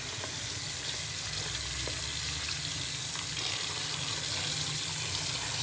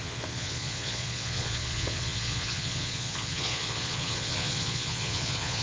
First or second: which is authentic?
first